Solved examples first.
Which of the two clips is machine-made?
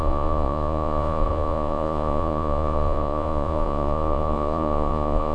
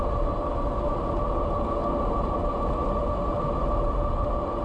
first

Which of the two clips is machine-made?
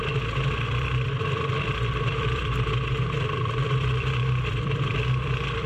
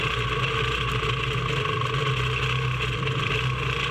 first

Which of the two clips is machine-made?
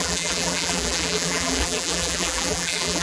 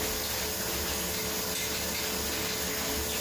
first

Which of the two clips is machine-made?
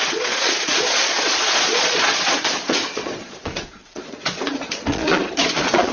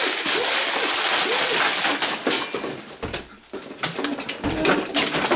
first